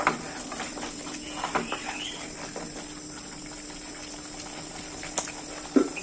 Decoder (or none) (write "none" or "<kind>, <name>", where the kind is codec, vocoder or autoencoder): none